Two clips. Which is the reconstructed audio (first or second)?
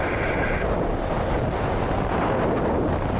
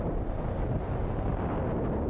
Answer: first